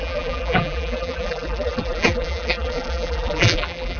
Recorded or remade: remade